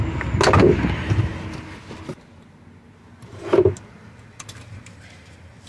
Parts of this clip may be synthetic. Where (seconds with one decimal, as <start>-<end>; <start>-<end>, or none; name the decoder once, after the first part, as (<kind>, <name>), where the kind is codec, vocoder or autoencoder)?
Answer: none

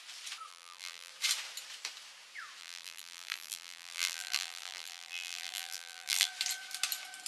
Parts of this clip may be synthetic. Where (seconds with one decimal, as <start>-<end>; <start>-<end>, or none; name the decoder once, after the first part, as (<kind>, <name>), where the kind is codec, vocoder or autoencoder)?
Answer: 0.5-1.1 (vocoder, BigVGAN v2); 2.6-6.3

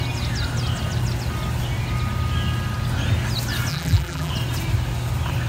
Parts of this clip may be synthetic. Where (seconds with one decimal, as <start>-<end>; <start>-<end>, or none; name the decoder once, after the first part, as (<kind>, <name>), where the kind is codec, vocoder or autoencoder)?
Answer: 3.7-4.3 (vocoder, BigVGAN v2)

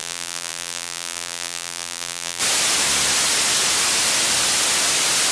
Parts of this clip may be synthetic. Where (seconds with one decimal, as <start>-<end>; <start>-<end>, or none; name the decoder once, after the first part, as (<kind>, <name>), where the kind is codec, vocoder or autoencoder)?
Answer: 0.0-2.4 (vocoder, BigVGAN v2)